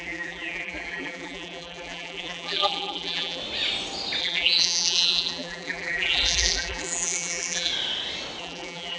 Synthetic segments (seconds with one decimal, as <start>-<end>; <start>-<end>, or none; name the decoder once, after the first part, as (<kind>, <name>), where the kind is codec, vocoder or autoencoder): 0.0-3.4 (vocoder, BigVGAN v2); 4.2-7.7; 8.4-9.0

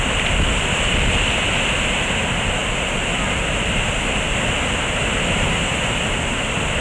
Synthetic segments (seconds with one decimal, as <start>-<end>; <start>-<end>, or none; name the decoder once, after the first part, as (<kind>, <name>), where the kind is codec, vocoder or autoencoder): none

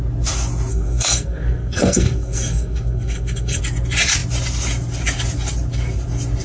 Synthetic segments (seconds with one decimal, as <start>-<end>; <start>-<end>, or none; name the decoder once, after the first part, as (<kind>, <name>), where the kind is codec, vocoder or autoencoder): 0.7-3.6 (codec, SNAC)

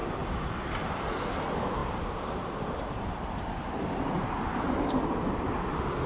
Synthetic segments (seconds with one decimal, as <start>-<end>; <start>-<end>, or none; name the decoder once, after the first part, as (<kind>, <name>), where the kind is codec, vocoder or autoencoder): 0.0-1.2 (vocoder, BigVGAN v2); 1.8-5.5

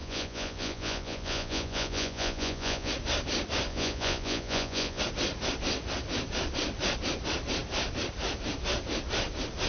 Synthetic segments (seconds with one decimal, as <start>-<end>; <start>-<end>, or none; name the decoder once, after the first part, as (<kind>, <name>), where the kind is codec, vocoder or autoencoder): 0.0-2.9 (vocoder, Vocos); 3.7-5.0

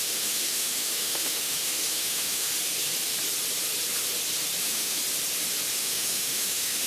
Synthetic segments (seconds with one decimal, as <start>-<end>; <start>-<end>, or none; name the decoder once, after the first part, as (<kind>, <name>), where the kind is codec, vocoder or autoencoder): 0.0-2.5 (autoencoder, DAC-VAE); 4.6-5.0; 5.7-6.9

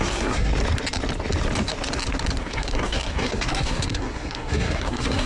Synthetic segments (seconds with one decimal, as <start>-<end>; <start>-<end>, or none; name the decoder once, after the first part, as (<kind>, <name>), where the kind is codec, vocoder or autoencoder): 0.0-0.5 (codec, SNAC); 2.4-5.3

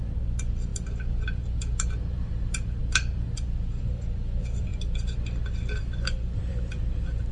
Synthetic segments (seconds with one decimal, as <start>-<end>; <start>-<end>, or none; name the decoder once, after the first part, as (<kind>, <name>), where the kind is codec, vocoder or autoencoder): none